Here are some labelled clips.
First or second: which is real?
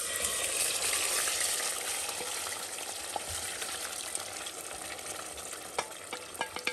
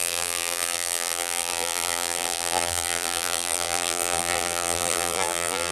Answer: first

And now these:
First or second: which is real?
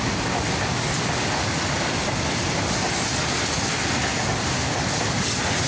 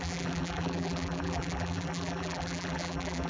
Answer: first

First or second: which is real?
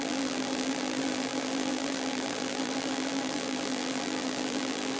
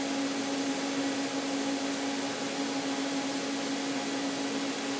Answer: second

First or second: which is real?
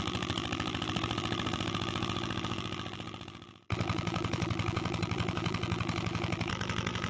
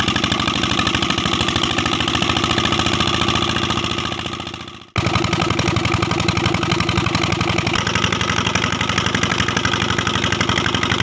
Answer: second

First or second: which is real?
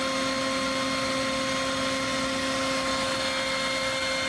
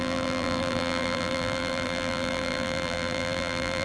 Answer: first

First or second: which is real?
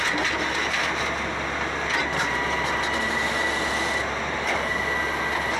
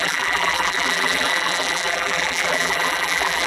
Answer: first